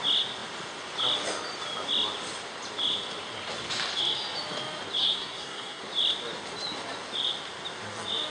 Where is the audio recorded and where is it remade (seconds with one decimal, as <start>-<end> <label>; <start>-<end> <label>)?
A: 0.0-5.0 recorded; 5.0-5.8 remade; 5.8-8.3 recorded